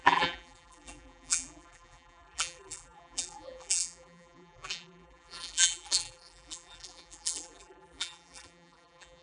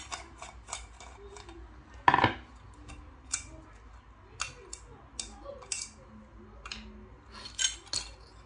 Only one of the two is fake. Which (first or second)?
first